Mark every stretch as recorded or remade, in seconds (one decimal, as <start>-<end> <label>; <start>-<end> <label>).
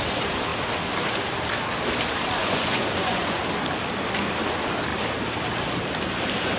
0.0-2.4 recorded; 2.4-3.4 remade; 3.4-6.6 recorded